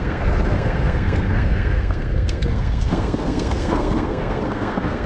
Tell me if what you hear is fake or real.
fake